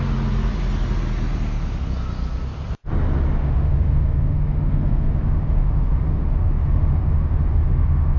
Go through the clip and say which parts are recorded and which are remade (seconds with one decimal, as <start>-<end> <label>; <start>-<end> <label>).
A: 0.0-3.4 recorded; 3.4-8.2 remade